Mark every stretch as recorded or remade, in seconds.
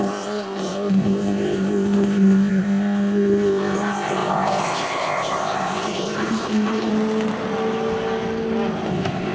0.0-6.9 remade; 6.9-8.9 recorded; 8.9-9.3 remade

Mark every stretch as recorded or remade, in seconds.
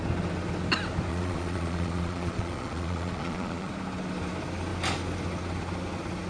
0.0-1.1 recorded; 1.1-3.7 remade; 3.7-6.3 recorded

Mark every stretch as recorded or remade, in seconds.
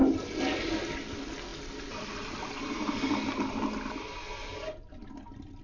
0.0-5.6 recorded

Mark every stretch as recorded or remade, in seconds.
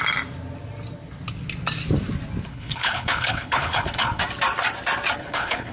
0.0-2.5 recorded; 2.5-4.2 remade; 4.2-5.2 recorded; 5.2-5.7 remade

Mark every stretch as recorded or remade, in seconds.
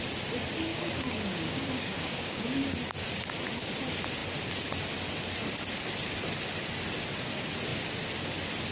0.0-0.7 recorded; 0.7-2.7 remade; 2.7-8.7 recorded